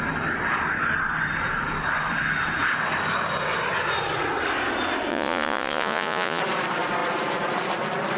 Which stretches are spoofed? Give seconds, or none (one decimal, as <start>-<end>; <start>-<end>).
5.1-6.4